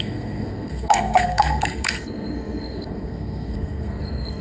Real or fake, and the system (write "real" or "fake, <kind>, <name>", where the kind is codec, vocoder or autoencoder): fake, codec, SNAC